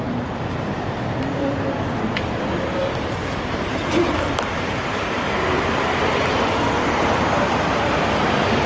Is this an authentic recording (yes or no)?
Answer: no